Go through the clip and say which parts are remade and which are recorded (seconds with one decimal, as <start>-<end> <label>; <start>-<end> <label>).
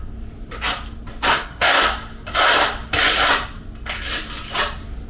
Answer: 0.0-1.3 recorded; 1.3-1.8 remade; 1.8-5.1 recorded